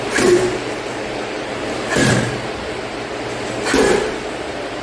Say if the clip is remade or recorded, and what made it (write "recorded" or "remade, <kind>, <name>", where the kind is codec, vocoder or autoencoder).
remade, vocoder, BigVGAN v2